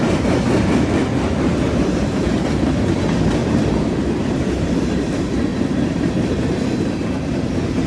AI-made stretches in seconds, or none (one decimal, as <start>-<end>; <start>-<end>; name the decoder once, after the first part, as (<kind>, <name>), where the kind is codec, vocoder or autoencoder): 1.0-3.0 (vocoder, BigVGAN v2); 3.4-4.2; 5.5-6.4